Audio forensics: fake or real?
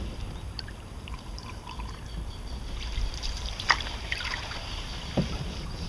fake